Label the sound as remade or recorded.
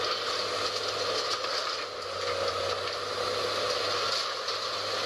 recorded